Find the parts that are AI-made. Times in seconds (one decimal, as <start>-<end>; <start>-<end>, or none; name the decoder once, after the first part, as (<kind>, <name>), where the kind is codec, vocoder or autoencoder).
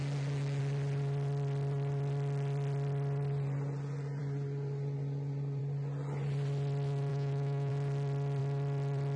7.1-7.7 (autoencoder, DAC-VAE)